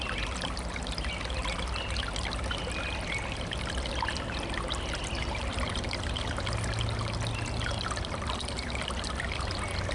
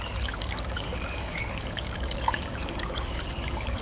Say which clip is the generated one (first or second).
second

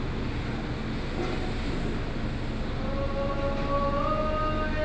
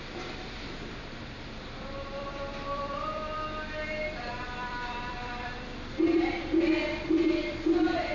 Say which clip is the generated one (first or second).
second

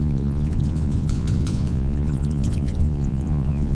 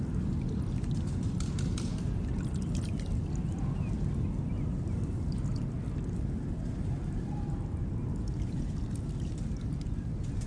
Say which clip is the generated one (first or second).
first